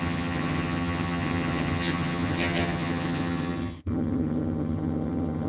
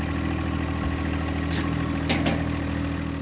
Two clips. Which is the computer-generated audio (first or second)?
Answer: first